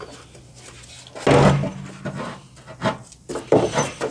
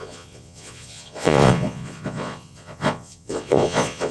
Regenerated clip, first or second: second